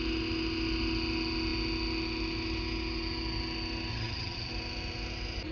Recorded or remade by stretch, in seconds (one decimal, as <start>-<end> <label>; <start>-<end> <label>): 0.0-3.9 recorded; 3.9-4.5 remade; 4.5-5.5 recorded